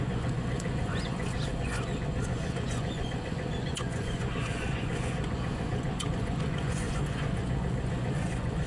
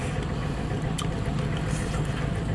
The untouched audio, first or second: second